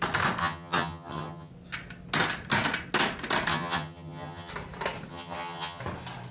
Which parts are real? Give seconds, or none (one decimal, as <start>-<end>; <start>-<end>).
0.0-0.4; 1.5-3.5; 4.5-5.1; 5.8-6.3